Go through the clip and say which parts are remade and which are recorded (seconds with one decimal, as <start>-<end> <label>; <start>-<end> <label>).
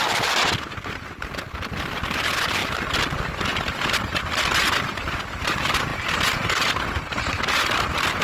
0.0-8.2 recorded